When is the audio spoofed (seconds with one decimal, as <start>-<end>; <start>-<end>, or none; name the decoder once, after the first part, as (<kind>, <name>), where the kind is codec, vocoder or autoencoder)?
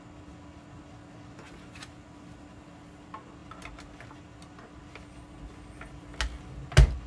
none